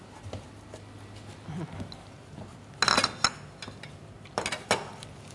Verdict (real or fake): real